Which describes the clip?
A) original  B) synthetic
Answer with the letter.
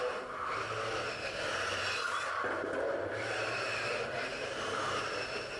A